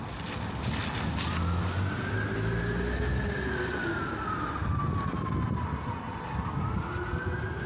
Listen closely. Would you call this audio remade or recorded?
recorded